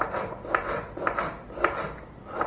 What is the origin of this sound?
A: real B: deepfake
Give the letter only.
A